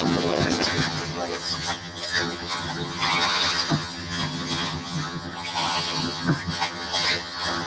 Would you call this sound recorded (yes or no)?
no